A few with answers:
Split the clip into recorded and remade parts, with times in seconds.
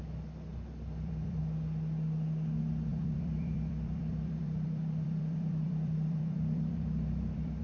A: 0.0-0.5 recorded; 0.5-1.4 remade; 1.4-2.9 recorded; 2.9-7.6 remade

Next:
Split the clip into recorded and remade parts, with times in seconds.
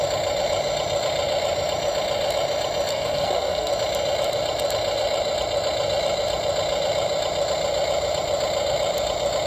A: 0.0-2.9 recorded; 2.9-3.7 remade; 3.7-9.5 recorded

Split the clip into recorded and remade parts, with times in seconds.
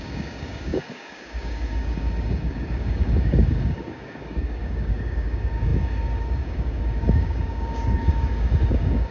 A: 0.0-9.1 remade